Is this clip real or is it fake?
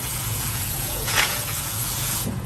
fake